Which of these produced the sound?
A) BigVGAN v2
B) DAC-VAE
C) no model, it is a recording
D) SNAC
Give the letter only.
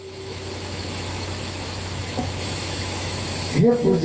B